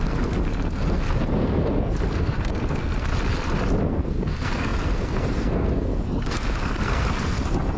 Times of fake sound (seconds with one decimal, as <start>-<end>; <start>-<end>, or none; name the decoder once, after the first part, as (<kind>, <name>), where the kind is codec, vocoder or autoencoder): 0.0-3.1 (codec, SNAC); 3.8-7.8